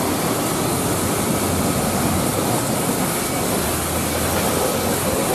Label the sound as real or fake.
real